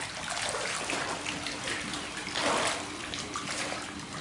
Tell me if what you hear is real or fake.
real